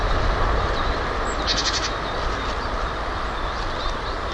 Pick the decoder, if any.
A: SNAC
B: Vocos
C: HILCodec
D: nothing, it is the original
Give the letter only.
D